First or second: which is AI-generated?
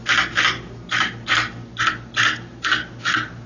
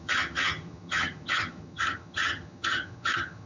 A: second